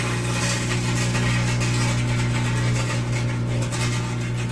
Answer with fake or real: real